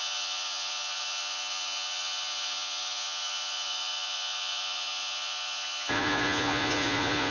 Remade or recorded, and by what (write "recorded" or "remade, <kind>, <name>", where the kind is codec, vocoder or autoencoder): remade, vocoder, Vocos